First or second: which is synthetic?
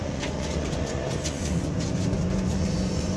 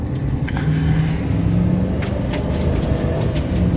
first